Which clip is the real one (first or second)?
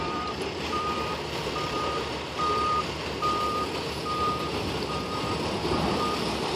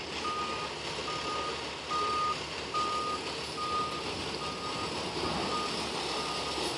second